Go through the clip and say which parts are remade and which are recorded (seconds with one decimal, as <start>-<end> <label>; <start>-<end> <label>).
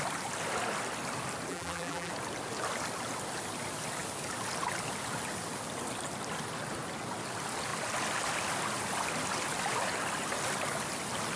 0.0-1.5 recorded; 1.5-2.1 remade; 2.1-11.4 recorded